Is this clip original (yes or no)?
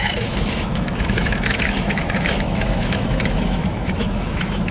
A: no